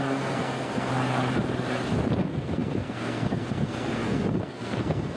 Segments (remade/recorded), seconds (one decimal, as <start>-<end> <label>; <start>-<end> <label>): 0.0-0.9 remade; 0.9-2.2 recorded; 2.2-5.2 remade